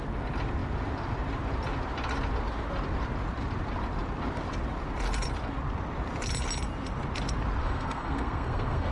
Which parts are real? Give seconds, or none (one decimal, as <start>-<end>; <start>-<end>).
0.0-7.6